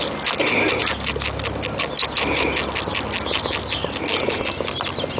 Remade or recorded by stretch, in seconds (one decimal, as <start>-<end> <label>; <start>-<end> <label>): 0.0-5.2 recorded